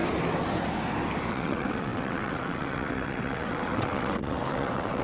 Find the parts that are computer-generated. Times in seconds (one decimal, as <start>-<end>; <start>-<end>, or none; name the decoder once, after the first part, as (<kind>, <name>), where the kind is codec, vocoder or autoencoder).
1.3-5.0 (vocoder, WaveNeXt)